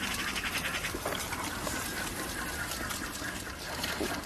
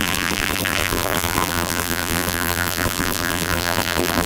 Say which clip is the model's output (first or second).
second